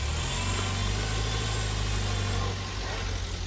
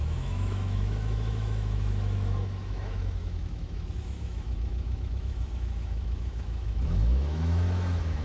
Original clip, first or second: first